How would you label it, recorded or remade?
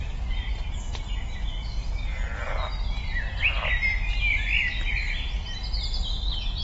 recorded